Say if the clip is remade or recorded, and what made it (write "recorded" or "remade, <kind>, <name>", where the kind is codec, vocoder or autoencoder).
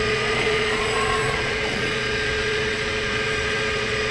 remade, vocoder, Vocos